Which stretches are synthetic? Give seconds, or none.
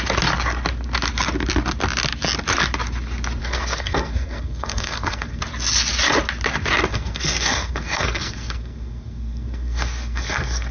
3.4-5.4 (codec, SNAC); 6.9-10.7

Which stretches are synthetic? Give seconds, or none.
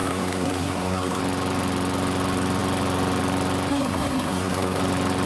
0.0-1.2 (codec, SNAC); 3.7-4.8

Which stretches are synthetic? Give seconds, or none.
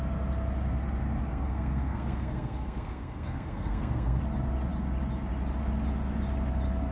1.3-4.2 (codec, SNAC)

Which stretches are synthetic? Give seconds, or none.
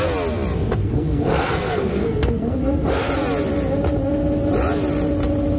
0.8-3.1 (codec, SNAC)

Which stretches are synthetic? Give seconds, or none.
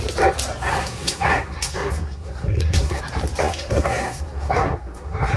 0.7-3.0 (codec, SNAC); 3.4-5.4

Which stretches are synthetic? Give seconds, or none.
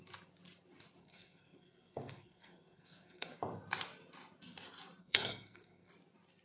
1.0-3.4 (codec, SNAC); 5.0-5.9